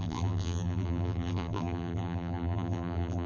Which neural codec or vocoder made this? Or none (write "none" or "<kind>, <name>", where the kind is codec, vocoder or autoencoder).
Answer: vocoder, BigVGAN v2